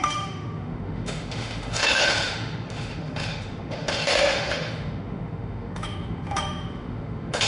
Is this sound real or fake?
fake